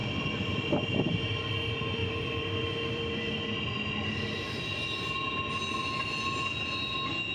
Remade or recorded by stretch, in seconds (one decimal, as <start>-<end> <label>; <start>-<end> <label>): 0.0-0.7 remade; 0.7-2.0 recorded; 2.0-4.8 remade; 4.8-7.3 recorded